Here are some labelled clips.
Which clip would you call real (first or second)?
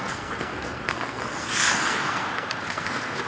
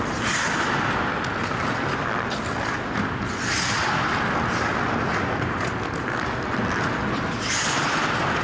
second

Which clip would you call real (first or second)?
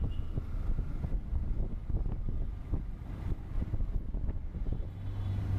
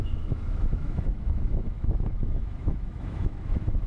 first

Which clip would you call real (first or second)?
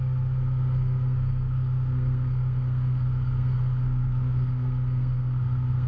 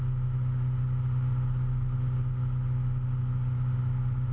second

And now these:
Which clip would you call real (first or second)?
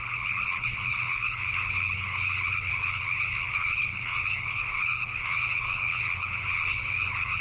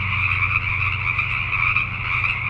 second